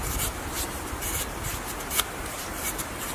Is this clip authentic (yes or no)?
no